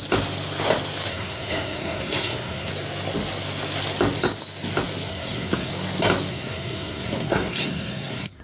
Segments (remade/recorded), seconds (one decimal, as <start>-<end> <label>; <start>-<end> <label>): 0.0-1.1 recorded; 1.1-2.7 remade; 2.7-5.1 recorded; 5.1-5.7 remade; 5.7-6.3 recorded; 6.3-8.4 remade